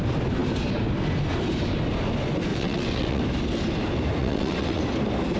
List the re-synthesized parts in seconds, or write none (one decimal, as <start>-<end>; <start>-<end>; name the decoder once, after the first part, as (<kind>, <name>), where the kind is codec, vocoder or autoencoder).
2.5-3.2 (vocoder, WaveNeXt); 4.2-4.8